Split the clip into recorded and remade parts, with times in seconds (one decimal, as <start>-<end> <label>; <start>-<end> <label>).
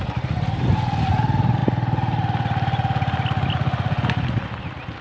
0.0-5.0 recorded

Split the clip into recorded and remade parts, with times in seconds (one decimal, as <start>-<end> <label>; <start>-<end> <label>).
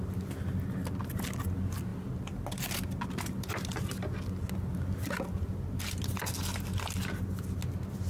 0.0-8.1 recorded